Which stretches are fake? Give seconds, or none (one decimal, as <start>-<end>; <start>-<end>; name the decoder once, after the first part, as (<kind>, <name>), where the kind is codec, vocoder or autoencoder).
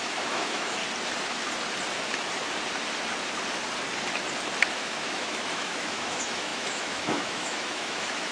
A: 0.0-0.8 (autoencoder, DAC-VAE); 4.7-8.3